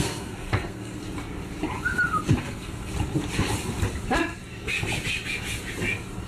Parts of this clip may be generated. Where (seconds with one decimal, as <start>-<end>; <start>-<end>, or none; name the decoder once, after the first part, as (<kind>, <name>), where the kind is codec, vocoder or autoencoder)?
0.0-1.0 (codec, SNAC); 2.4-2.9